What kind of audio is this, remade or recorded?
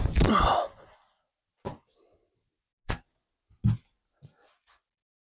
recorded